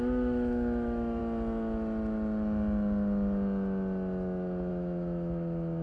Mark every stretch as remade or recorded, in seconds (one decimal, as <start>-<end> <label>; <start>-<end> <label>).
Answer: 0.0-1.2 remade; 1.2-4.7 recorded; 4.7-5.8 remade